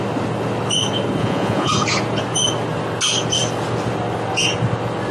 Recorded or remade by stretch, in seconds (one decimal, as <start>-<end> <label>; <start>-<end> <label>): 0.0-1.2 recorded; 1.2-1.7 remade; 1.7-5.1 recorded